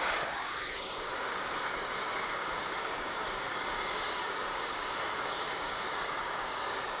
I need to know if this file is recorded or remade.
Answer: remade